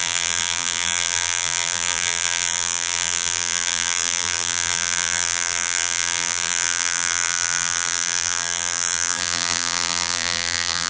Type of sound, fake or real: fake